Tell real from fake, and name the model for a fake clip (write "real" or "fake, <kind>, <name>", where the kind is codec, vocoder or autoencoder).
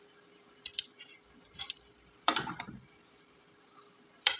fake, vocoder, BigVGAN v2